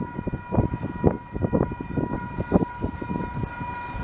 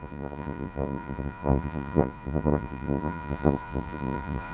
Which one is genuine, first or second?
first